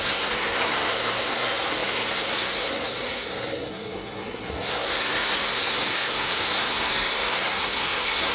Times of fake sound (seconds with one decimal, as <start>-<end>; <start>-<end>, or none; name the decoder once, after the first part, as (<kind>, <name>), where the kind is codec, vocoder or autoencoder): 0.0-8.3 (codec, SNAC)